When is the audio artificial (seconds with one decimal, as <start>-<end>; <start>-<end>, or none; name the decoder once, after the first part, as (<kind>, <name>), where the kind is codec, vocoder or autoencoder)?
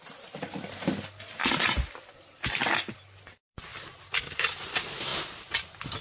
0.0-3.7 (vocoder, BigVGAN v2); 4.2-5.1